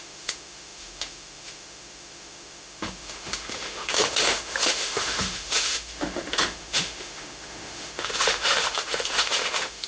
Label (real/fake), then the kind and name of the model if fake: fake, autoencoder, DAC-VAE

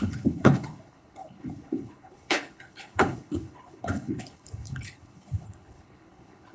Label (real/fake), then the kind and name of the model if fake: fake, codec, HILCodec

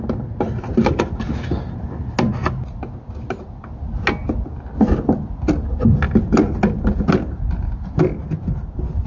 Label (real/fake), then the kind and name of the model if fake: real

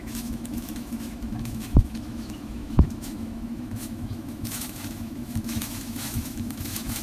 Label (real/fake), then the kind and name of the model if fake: fake, autoencoder, DAC-VAE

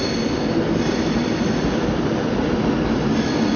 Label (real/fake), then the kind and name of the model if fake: real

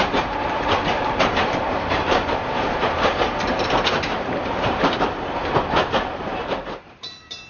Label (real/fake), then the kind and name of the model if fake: fake, vocoder, BigVGAN v2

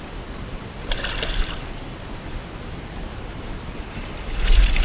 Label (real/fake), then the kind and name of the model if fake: real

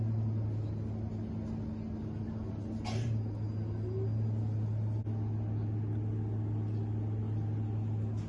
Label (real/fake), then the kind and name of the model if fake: real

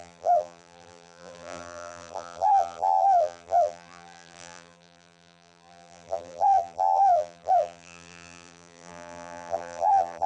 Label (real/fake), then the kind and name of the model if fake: fake, vocoder, BigVGAN v2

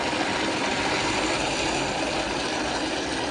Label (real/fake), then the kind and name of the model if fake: real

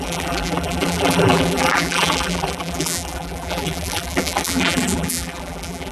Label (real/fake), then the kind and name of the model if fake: fake, vocoder, BigVGAN v2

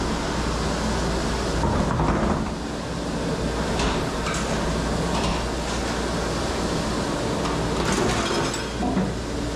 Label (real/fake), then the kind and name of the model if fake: real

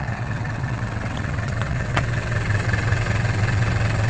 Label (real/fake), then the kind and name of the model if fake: fake, vocoder, WaveNeXt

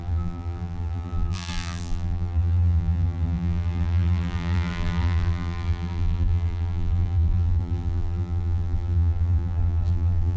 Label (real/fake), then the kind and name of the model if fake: fake, vocoder, BigVGAN v2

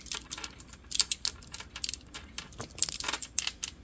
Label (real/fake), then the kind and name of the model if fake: real